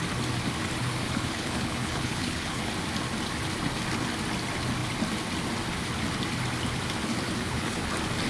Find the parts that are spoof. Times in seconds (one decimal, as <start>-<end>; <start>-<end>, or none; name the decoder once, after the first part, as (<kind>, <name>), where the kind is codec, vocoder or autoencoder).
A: 0.8-2.7 (codec, HILCodec); 7.4-7.9